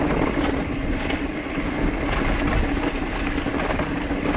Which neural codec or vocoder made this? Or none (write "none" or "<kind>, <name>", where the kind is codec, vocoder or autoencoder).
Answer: none